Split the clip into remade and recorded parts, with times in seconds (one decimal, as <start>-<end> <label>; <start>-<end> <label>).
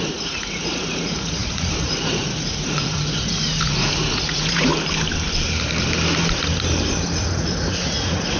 0.0-4.7 remade; 4.7-7.2 recorded; 7.2-8.4 remade